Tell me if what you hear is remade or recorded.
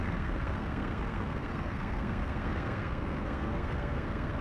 remade